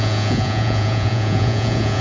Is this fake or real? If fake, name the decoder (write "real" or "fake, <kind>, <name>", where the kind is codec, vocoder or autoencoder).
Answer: fake, vocoder, Vocos